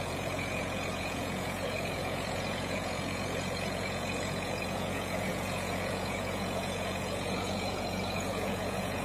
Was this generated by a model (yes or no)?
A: yes